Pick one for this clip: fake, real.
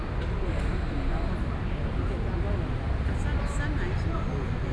real